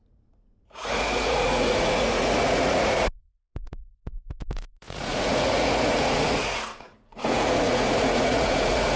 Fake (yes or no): yes